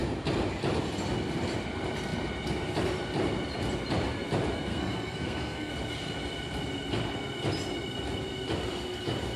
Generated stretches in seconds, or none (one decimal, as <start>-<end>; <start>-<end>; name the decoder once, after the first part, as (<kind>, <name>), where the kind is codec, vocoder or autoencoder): 4.7-5.7 (codec, SNAC)